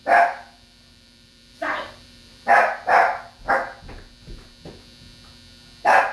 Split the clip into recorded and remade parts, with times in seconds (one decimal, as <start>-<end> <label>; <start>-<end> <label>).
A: 0.0-3.5 remade; 3.5-6.1 recorded